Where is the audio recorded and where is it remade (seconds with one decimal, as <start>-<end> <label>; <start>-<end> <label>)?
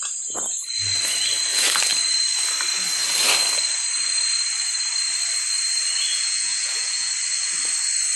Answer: 0.0-6.1 recorded; 6.1-7.1 remade; 7.1-8.2 recorded